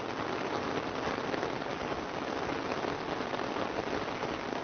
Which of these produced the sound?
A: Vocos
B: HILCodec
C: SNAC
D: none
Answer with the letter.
D